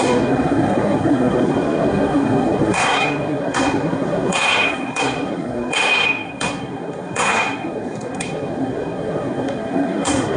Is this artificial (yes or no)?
yes